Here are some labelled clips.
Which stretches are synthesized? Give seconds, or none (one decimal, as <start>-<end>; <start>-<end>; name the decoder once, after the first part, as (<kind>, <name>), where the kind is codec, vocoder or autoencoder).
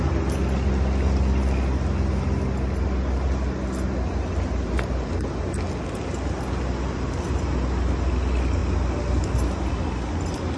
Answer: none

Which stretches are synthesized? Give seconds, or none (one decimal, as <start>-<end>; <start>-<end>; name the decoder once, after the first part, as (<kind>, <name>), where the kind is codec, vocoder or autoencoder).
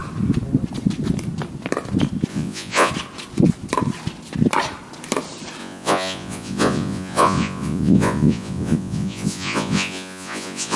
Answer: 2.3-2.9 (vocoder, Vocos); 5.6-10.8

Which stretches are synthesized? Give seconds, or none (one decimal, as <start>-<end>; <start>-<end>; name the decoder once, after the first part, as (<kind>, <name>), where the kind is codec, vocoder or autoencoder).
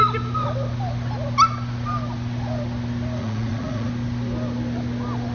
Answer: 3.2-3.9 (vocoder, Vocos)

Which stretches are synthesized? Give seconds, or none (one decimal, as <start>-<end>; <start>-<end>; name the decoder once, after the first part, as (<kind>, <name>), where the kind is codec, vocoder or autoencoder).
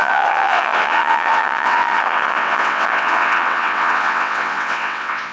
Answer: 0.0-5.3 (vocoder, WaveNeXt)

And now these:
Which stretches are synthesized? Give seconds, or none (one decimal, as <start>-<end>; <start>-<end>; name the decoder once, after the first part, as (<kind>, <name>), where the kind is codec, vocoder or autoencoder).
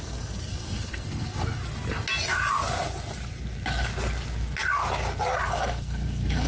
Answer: 0.0-1.6 (codec, SNAC); 5.5-6.5